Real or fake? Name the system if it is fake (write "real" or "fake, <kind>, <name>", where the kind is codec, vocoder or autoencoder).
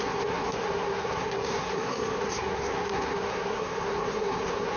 fake, codec, SNAC